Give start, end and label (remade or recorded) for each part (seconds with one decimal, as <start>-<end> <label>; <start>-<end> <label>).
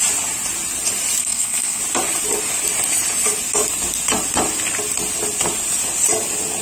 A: 0.0-1.2 recorded; 1.2-1.8 remade; 1.8-6.6 recorded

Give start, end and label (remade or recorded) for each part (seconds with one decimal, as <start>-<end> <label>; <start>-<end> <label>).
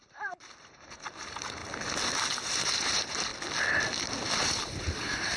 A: 0.0-1.6 remade; 1.6-2.3 recorded; 2.3-3.3 remade; 3.3-4.5 recorded; 4.5-5.4 remade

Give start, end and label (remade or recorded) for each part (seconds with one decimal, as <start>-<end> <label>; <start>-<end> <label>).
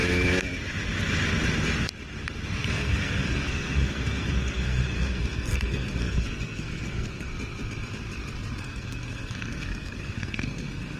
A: 0.0-2.7 recorded; 2.7-7.3 remade; 7.3-8.6 recorded; 8.6-11.0 remade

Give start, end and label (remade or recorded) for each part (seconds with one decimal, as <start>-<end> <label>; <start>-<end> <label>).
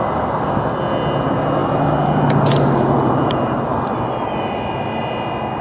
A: 0.0-1.6 recorded; 1.6-5.0 remade; 5.0-5.6 recorded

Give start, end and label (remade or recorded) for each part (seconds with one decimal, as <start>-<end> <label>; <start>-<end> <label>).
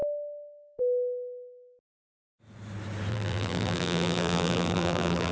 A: 0.0-3.1 recorded; 3.1-5.3 remade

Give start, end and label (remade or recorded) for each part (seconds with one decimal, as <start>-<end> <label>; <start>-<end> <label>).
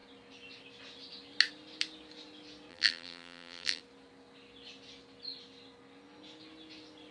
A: 0.0-2.7 recorded; 2.7-3.8 remade; 3.8-7.1 recorded